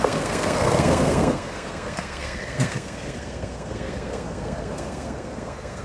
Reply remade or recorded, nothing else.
remade